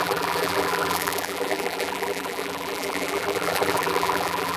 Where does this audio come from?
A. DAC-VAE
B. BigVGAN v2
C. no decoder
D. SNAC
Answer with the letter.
B